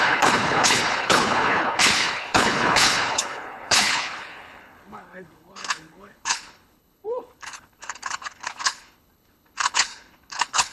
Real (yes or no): no